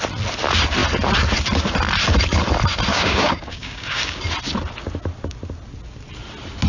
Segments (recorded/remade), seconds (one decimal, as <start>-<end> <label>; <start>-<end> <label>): 0.0-2.9 recorded; 2.9-4.2 remade; 4.2-6.7 recorded